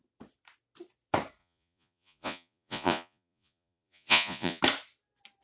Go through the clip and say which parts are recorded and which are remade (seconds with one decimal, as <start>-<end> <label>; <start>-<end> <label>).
0.0-1.4 recorded; 1.4-4.6 remade; 4.6-5.4 recorded